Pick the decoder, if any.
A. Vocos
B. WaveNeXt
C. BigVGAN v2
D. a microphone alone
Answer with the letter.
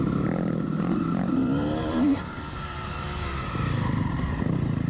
C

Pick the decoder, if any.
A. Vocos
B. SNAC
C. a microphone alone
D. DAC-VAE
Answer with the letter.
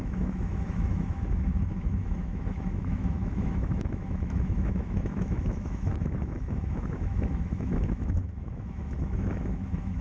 D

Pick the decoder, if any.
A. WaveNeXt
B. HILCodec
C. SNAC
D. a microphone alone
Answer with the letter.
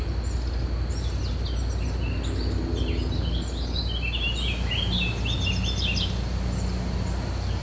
D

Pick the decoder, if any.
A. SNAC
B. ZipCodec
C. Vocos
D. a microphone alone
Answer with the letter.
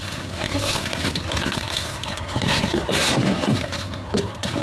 A